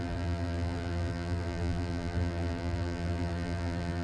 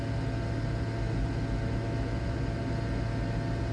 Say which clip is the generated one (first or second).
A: first